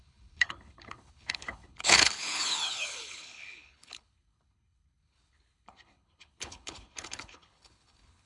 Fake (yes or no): yes